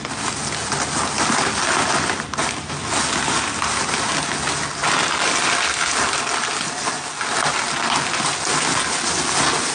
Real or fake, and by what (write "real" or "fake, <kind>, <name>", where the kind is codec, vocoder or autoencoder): real